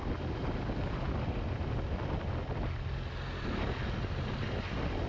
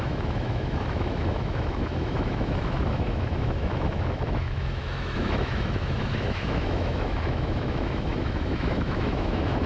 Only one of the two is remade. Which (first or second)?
second